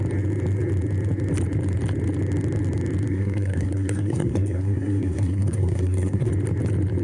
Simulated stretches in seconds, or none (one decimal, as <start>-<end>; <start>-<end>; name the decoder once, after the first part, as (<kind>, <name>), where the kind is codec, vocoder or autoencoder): 3.1-6.3 (codec, SNAC)